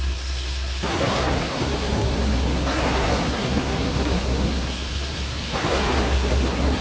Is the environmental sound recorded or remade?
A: remade